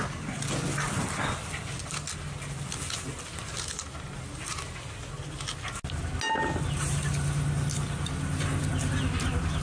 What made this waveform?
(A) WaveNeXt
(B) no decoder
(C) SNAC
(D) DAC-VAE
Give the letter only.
B